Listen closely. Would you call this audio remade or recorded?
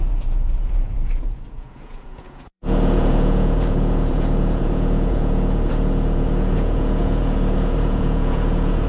remade